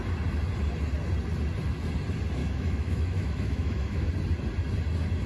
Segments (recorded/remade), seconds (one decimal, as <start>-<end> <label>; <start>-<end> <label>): 0.0-2.4 recorded; 2.4-4.1 remade; 4.1-5.3 recorded